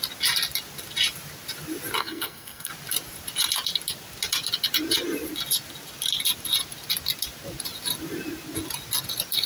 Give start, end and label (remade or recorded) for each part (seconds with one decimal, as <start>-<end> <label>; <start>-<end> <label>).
0.0-2.0 recorded; 2.0-2.7 remade; 2.7-9.5 recorded